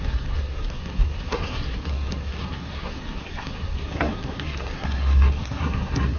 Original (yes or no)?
no